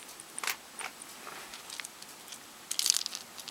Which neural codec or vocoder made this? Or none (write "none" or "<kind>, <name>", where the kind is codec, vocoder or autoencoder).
none